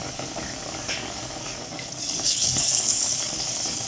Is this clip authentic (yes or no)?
no